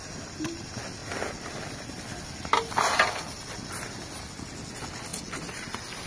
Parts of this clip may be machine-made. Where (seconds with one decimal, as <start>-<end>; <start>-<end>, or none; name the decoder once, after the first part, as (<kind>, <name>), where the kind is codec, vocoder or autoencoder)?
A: none